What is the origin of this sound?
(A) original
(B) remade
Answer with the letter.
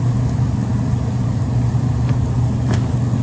A